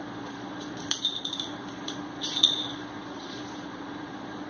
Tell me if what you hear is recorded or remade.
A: remade